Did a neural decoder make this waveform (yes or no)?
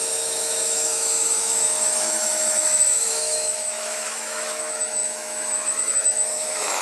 yes